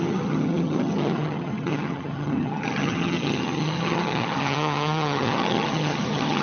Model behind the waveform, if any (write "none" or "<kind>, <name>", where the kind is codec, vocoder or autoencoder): vocoder, HiFi-GAN